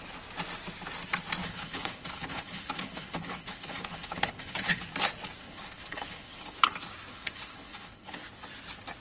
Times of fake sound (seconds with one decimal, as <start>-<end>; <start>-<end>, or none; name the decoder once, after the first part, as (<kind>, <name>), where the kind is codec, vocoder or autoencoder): 1.4-4.8 (codec, HILCodec); 5.4-6.6; 7.1-8.3